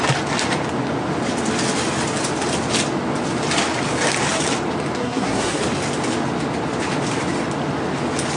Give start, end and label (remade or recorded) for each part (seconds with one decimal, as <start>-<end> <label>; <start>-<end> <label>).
0.0-5.0 recorded; 5.0-5.6 remade; 5.6-8.4 recorded

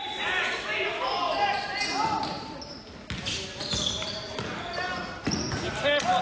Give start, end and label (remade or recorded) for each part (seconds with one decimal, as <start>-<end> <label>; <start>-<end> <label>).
0.0-6.2 recorded

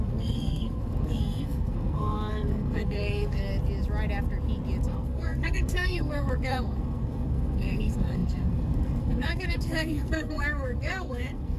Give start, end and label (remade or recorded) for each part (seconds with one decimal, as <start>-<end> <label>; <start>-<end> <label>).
0.0-3.5 remade; 3.5-4.8 recorded; 4.8-11.6 remade